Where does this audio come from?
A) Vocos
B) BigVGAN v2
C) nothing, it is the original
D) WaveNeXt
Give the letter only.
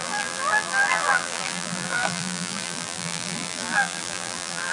B